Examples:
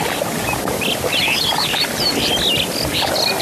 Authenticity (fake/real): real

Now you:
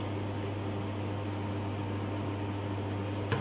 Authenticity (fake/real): real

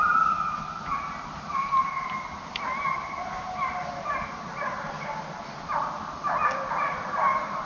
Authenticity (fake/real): real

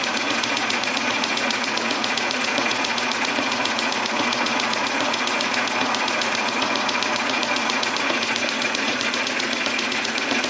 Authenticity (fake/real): fake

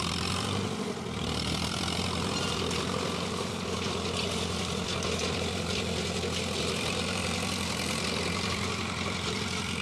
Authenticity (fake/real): fake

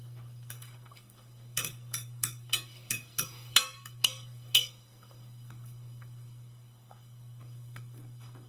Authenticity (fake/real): fake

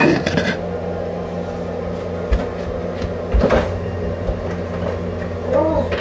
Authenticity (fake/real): real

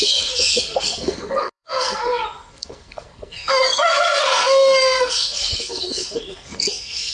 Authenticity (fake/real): fake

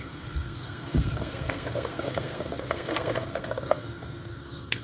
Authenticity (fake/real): fake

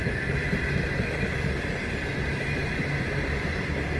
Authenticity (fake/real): fake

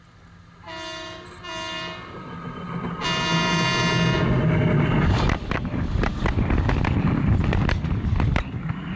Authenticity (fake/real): real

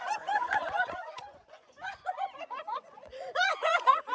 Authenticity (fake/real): fake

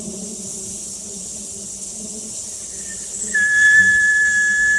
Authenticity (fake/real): real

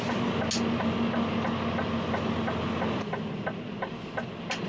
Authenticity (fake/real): real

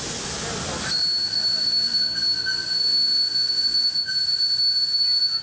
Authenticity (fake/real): real